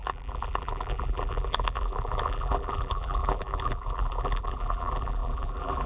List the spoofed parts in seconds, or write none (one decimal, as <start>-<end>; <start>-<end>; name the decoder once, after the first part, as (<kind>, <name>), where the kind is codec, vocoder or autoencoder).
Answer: 0.0-5.9 (vocoder, BigVGAN v2)